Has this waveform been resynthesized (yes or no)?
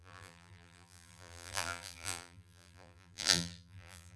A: yes